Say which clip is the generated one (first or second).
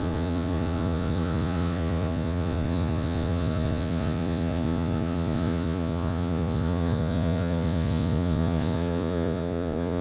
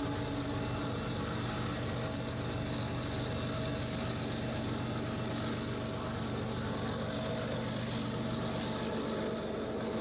first